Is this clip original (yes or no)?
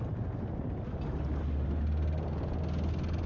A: yes